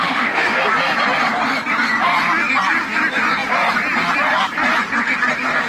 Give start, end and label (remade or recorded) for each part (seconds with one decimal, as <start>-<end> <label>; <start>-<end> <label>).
0.0-0.6 remade; 0.6-5.7 recorded